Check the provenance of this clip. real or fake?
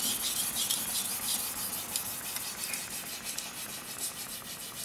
real